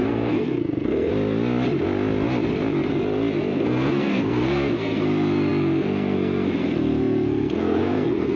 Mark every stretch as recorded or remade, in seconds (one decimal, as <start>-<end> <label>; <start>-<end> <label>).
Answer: 0.0-1.1 remade; 1.1-3.5 recorded; 3.5-8.4 remade